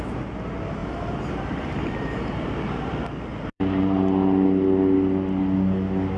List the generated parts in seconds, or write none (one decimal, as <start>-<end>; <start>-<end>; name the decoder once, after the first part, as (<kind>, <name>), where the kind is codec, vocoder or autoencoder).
0.8-2.9 (vocoder, BigVGAN v2); 3.3-4.0